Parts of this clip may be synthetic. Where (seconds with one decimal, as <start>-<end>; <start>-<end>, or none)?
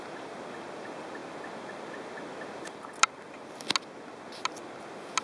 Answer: none